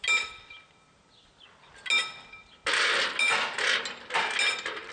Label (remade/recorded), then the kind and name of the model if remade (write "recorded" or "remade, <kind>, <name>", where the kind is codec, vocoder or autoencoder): recorded